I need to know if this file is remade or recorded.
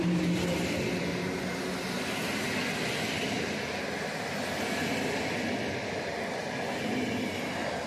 recorded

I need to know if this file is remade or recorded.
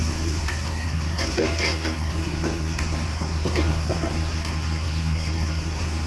remade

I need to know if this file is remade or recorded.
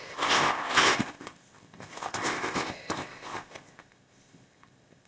remade